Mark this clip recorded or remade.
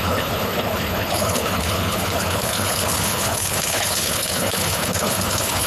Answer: remade